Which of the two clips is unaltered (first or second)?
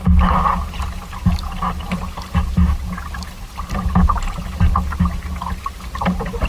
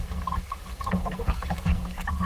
first